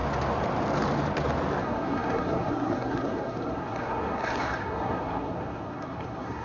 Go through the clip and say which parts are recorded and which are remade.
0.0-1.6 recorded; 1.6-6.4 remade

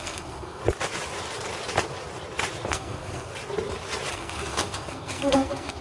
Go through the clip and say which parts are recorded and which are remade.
0.0-0.6 remade; 0.6-2.7 recorded; 2.7-3.3 remade; 3.3-4.1 recorded; 4.1-5.8 remade

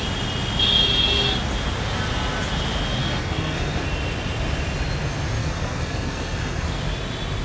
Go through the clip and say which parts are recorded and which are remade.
0.0-3.0 recorded; 3.0-3.8 remade; 3.8-5.4 recorded; 5.4-6.8 remade; 6.8-7.4 recorded

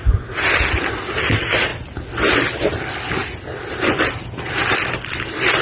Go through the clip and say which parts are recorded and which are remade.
0.0-5.6 recorded

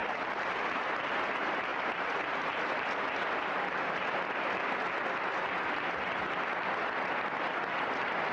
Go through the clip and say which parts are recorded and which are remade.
0.0-8.3 recorded

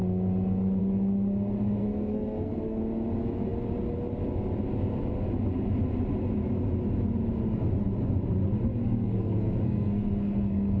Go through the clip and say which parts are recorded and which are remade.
0.0-1.8 recorded; 1.8-2.8 remade; 2.8-8.8 recorded; 8.8-10.8 remade